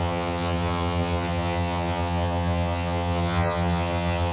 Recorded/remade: remade